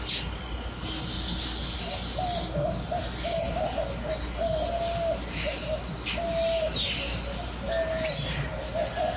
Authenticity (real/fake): real